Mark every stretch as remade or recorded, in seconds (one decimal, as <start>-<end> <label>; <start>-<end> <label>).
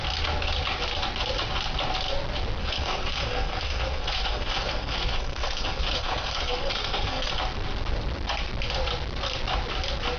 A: 0.0-2.6 recorded; 2.6-7.3 remade; 7.3-10.2 recorded